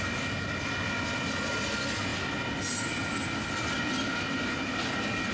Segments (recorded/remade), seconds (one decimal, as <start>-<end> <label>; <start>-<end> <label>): 0.0-5.3 recorded